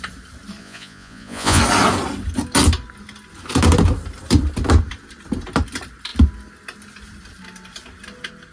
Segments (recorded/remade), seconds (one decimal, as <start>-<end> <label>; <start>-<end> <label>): 0.0-0.6 recorded; 0.6-1.6 remade; 1.6-8.5 recorded